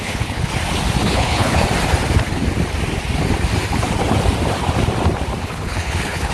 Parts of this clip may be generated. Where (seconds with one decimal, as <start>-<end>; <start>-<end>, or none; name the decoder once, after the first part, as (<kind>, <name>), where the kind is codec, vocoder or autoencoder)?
0.0-0.5 (codec, HILCodec); 1.1-1.6; 5.4-6.3